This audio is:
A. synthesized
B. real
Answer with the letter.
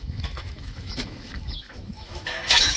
A